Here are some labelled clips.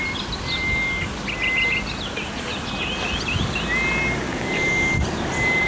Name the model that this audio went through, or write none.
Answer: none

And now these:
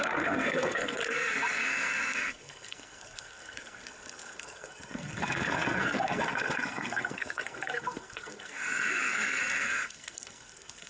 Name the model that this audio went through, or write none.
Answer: codec, SNAC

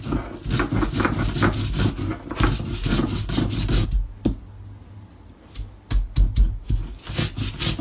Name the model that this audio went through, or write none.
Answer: none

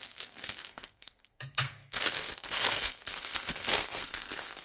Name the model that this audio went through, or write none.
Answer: codec, SNAC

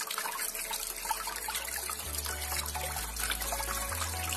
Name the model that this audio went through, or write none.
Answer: none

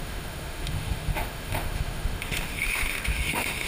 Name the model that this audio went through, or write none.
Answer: autoencoder, DAC-VAE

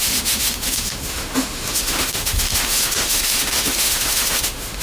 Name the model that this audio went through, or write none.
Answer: autoencoder, DAC-VAE